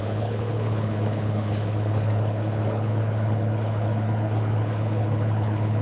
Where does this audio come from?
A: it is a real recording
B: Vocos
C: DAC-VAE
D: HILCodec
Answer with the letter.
D